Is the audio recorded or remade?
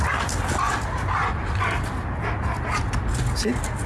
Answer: recorded